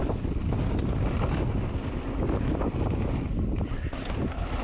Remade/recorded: recorded